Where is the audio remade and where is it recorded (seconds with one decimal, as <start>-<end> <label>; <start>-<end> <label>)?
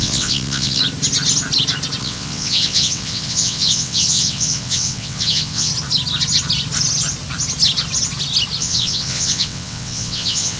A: 0.0-0.8 remade; 0.8-2.0 recorded; 2.0-5.7 remade; 5.7-8.6 recorded; 8.6-10.6 remade